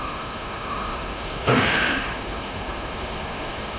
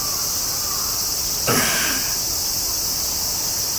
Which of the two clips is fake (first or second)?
first